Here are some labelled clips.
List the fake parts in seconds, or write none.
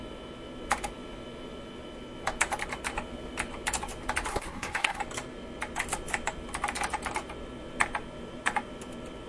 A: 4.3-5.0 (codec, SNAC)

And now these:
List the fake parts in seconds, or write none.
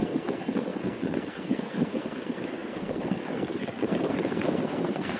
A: 0.0-5.2 (codec, SNAC)